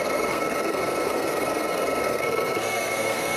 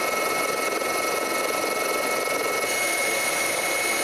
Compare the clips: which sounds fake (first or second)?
first